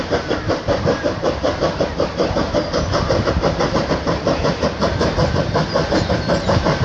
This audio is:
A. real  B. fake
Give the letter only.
B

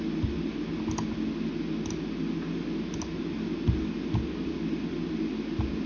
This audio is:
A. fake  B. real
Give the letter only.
B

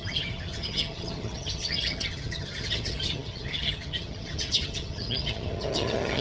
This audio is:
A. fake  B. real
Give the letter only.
A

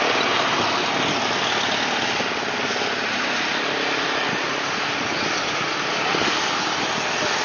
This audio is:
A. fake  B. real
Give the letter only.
B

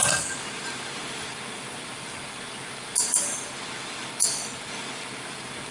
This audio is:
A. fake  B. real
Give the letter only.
B